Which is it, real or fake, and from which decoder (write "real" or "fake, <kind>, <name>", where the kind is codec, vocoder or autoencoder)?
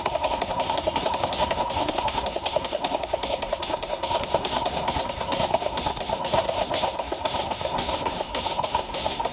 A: fake, codec, SNAC